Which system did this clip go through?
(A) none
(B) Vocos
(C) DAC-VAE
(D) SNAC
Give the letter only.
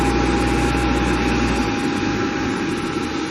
A